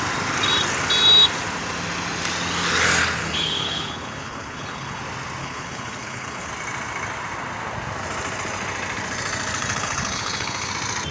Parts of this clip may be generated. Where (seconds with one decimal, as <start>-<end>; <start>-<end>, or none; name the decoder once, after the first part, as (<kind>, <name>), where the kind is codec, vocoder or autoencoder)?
3.2-5.0 (codec, HILCodec); 5.4-6.5; 9.6-10.7